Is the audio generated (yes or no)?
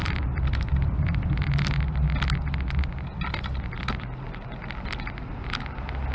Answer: no